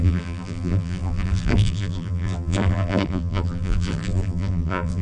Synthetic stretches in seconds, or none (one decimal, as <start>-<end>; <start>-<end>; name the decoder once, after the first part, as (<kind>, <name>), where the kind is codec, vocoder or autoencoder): 0.0-5.0 (vocoder, BigVGAN v2)